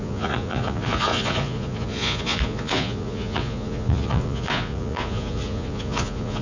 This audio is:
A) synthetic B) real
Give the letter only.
A